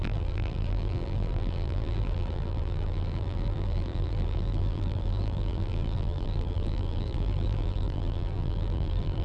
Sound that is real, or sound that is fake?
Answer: fake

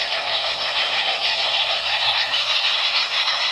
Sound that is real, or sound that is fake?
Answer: fake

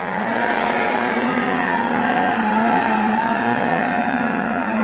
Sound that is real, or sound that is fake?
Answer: fake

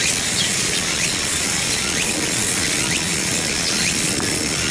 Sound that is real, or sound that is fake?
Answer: fake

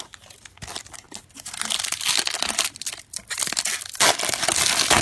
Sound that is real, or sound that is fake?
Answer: real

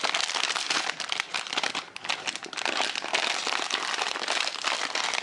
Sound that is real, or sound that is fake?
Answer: real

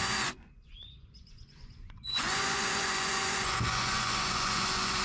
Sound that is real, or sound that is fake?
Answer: fake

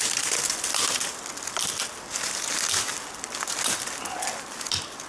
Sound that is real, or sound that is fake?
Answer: real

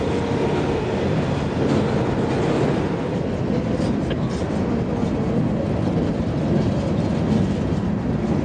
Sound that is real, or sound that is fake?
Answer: real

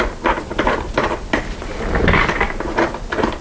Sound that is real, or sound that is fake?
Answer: real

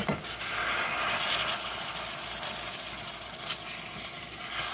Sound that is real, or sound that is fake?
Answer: real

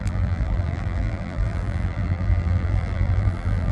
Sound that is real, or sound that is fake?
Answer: fake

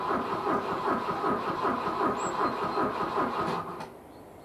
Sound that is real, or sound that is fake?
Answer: real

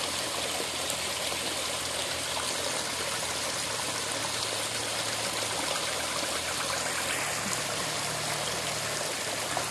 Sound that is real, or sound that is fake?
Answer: real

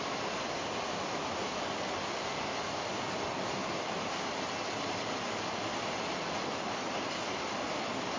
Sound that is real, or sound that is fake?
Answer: real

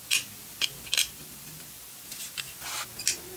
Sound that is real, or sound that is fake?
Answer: real